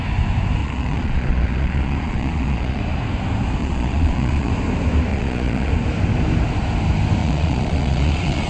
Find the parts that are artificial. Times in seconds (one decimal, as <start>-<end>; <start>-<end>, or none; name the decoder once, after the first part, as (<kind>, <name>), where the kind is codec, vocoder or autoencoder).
0.6-2.8 (vocoder, Vocos); 3.6-4.5; 5.1-5.7; 7.2-8.5